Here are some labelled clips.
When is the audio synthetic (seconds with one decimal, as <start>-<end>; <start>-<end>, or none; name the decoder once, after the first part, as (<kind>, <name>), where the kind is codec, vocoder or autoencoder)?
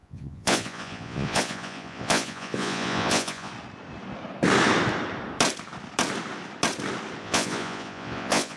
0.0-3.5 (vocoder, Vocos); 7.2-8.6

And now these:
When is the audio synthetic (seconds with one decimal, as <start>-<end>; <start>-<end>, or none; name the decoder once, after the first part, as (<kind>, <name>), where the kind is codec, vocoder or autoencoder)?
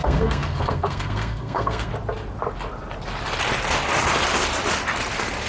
0.0-1.9 (codec, SNAC)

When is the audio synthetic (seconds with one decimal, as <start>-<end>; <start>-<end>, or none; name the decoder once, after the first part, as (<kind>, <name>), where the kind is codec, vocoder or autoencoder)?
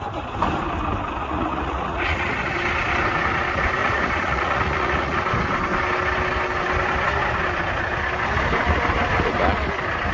1.2-2.5 (vocoder, Vocos); 3.8-5.2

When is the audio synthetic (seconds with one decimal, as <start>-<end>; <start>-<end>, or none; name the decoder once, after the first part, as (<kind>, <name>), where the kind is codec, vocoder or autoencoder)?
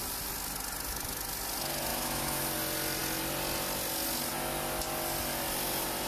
1.9-2.4 (autoencoder, DAC-VAE)